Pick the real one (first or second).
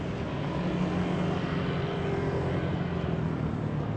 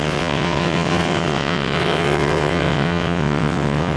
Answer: first